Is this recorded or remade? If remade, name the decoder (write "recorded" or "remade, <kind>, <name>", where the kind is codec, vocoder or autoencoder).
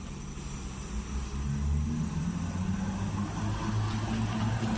recorded